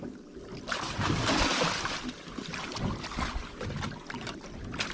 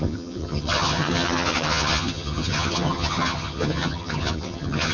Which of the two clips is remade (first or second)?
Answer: second